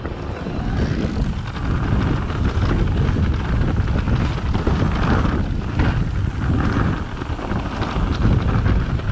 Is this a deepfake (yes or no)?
no